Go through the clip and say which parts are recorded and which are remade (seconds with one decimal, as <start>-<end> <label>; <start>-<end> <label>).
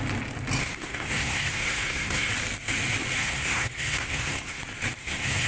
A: 0.0-0.6 recorded; 0.6-2.3 remade; 2.3-3.2 recorded; 3.2-4.6 remade; 4.6-5.0 recorded; 5.0-5.5 remade